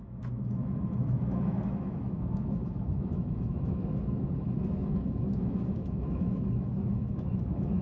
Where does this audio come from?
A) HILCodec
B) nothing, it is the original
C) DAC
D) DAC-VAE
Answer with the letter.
D